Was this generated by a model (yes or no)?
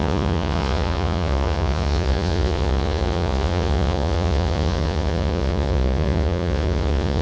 yes